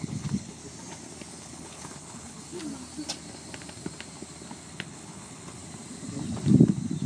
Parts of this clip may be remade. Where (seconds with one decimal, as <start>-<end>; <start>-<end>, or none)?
0.0-0.6; 1.3-2.6; 4.7-5.6